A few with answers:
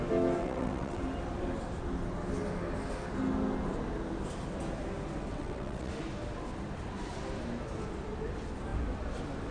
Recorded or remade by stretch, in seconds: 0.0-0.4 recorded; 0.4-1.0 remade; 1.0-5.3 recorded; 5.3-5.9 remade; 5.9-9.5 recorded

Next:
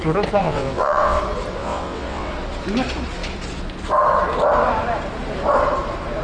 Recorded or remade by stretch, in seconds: 0.0-0.4 recorded; 0.4-1.2 remade; 1.2-1.6 recorded; 1.6-2.3 remade; 2.3-6.2 recorded

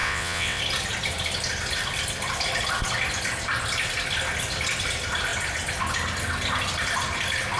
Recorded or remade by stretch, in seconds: 0.0-0.6 remade; 0.6-7.6 recorded